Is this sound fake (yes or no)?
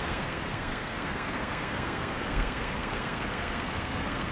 yes